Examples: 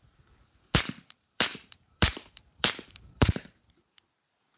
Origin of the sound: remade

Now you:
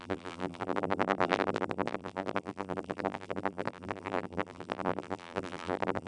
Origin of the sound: remade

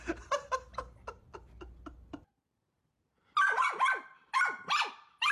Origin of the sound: recorded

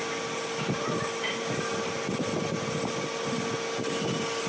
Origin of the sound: recorded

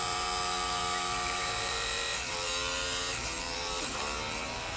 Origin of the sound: remade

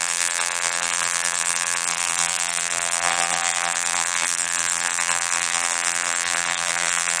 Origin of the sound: remade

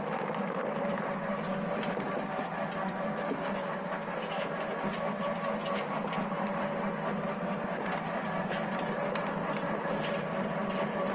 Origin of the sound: remade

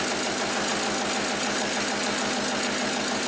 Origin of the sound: recorded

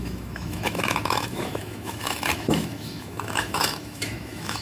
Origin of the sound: remade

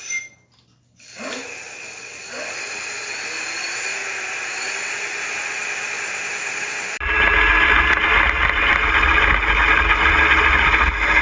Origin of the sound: recorded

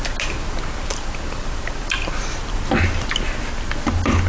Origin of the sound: recorded